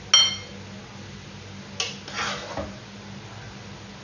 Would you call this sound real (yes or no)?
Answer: yes